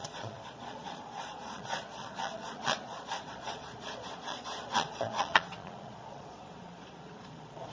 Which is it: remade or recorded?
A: remade